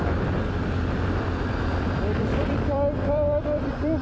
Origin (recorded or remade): remade